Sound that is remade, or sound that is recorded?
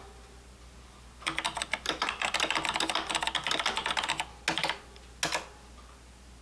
recorded